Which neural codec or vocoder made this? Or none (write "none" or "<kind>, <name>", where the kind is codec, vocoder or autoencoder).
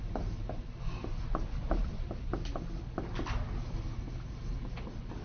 none